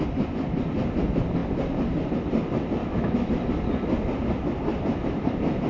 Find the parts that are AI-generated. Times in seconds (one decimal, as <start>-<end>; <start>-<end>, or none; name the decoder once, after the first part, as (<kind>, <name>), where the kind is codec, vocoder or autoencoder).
2.8-3.3 (autoencoder, DAC-VAE)